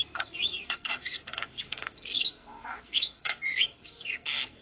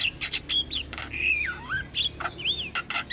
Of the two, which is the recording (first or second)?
second